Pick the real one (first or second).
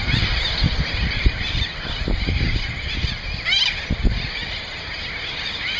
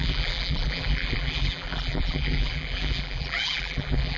first